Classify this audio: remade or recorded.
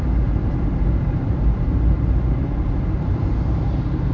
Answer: remade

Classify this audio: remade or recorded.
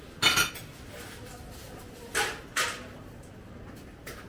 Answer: recorded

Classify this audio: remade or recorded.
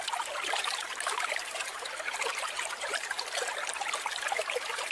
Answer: remade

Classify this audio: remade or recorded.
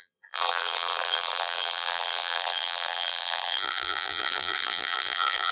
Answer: remade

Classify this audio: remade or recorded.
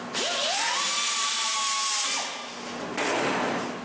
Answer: recorded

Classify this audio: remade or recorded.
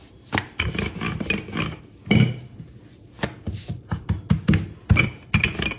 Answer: recorded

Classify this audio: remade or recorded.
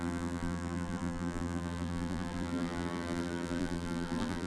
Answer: remade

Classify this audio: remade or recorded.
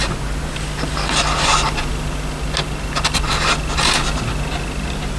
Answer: recorded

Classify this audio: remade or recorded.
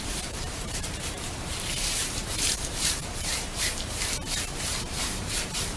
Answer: remade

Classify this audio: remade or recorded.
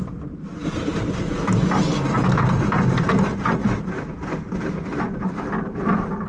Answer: recorded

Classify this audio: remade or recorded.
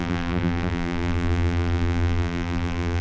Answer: remade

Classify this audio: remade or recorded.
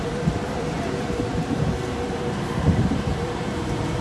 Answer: remade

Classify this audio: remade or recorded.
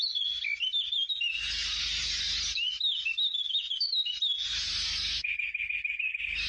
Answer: recorded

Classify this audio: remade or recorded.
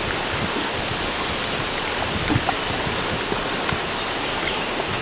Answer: remade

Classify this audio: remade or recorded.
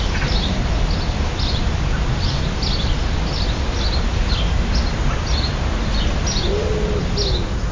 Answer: recorded